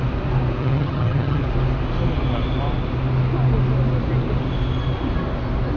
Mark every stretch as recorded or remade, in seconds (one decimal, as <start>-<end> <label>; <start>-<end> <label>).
0.0-0.6 recorded; 0.6-1.4 remade; 1.4-5.8 recorded